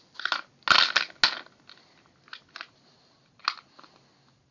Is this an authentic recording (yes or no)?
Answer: yes